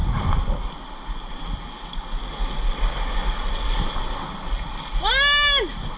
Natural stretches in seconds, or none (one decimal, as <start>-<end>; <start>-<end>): 0.0-6.0